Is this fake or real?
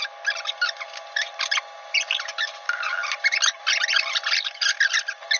real